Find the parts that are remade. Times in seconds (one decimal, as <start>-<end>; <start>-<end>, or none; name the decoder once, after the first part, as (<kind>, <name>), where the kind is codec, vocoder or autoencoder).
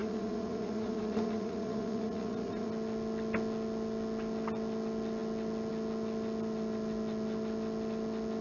0.0-2.7 (vocoder, Vocos)